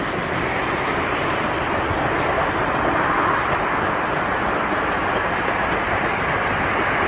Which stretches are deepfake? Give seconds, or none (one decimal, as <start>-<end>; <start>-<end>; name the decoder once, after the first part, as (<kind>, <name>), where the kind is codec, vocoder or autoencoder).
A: 5.0-6.1 (vocoder, BigVGAN v2)